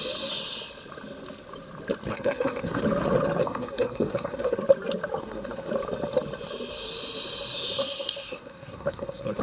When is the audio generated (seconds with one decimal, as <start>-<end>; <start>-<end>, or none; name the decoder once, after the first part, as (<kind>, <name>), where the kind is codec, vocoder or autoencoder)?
2.1-2.8 (codec, SNAC); 3.4-4.6; 5.2-5.7; 7.8-9.4

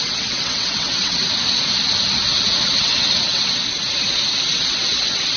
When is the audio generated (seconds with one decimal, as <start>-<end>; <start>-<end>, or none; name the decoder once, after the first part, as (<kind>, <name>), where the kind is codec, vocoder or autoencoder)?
0.0-1.2 (vocoder, WaveNeXt); 2.8-3.6; 4.4-5.4